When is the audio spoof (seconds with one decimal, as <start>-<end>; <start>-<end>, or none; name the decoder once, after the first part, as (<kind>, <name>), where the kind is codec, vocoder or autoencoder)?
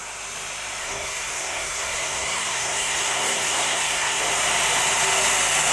0.8-4.2 (codec, SNAC)